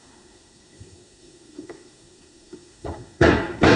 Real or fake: fake